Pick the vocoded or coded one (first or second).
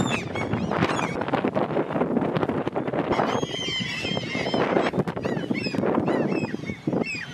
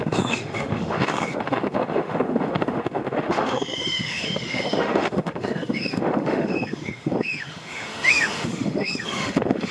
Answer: second